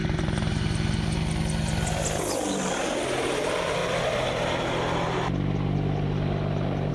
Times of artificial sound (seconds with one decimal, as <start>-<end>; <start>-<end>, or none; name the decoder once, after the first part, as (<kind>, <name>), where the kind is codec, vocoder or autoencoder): none